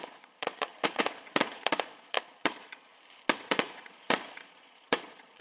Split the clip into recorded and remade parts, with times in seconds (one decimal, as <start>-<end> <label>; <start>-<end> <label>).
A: 0.0-2.9 remade; 2.9-3.5 recorded; 3.5-5.4 remade